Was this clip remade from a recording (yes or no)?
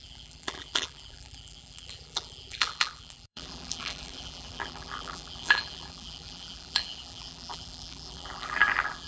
yes